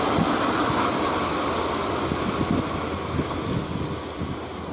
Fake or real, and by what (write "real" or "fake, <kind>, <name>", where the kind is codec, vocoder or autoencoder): real